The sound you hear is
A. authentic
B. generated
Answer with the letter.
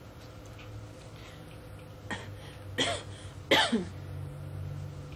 A